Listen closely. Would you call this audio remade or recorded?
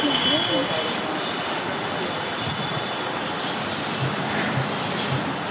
recorded